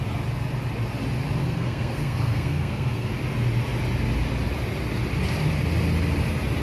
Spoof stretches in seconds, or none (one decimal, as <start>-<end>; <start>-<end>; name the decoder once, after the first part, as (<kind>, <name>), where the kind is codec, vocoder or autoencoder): 1.4-3.1 (codec, SNAC)